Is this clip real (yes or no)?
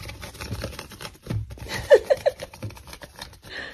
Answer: no